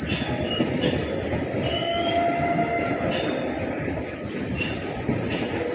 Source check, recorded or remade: recorded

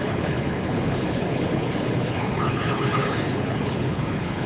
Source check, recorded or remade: remade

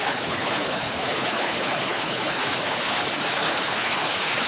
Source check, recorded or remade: remade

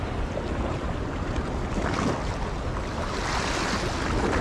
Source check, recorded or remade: recorded